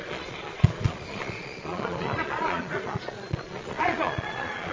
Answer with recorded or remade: remade